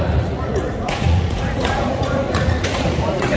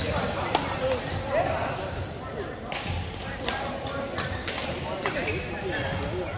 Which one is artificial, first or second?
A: first